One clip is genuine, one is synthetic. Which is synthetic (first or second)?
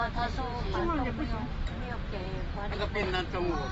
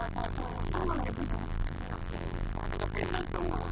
second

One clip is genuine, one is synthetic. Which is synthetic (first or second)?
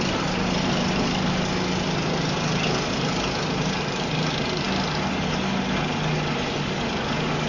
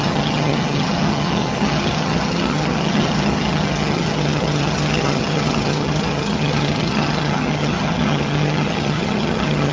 second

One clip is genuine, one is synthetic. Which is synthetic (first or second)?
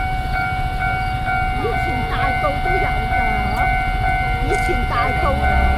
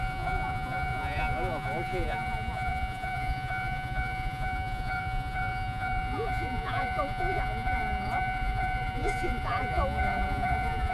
second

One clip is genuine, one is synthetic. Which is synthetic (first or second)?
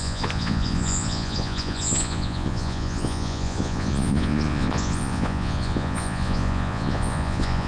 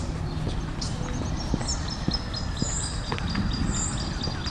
first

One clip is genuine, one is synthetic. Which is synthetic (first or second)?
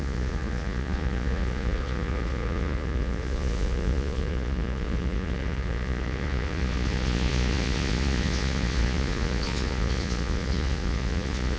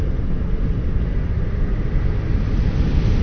first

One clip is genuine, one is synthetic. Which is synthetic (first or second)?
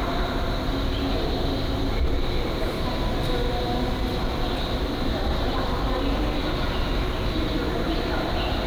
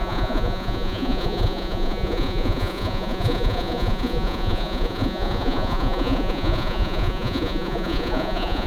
second